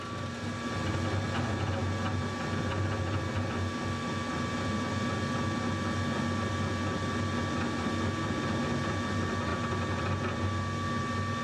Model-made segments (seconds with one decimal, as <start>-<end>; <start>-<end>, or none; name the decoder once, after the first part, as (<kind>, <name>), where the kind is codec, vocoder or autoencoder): none